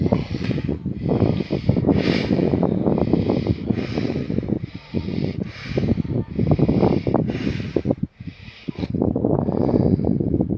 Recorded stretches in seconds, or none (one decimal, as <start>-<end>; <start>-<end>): 0.8-2.3; 2.8-3.5; 5.6-7.6